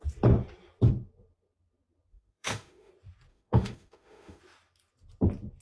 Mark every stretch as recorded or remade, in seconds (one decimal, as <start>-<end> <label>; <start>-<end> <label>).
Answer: 0.0-2.1 recorded; 2.1-2.9 remade; 2.9-3.3 recorded; 3.3-4.4 remade; 4.4-5.6 recorded